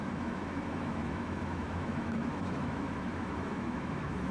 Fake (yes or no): yes